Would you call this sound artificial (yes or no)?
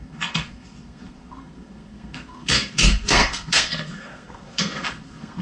yes